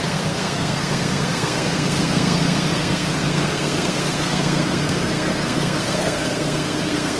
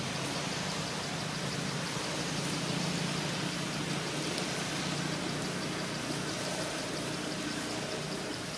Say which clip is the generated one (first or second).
first